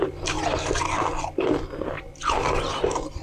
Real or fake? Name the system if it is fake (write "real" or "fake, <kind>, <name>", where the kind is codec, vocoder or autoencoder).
real